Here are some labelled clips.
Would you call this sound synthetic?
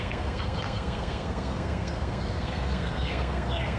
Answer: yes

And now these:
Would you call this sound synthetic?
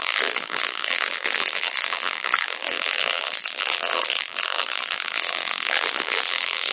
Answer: yes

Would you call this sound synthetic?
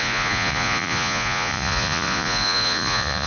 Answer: yes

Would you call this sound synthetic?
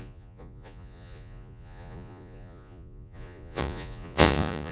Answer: yes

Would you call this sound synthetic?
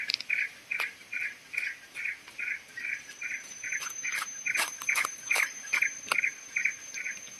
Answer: no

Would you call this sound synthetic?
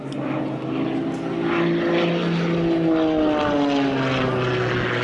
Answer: no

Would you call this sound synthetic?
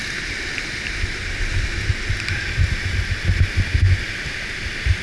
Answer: no